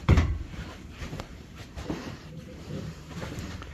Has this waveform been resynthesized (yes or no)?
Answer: yes